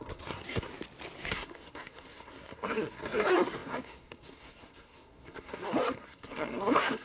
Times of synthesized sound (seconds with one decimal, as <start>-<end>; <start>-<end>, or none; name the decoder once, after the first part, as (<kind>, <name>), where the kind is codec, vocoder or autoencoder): 0.0-0.7 (codec, SNAC); 1.3-7.0